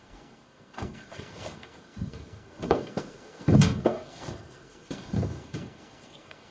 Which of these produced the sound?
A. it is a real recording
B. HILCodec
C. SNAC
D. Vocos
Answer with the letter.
C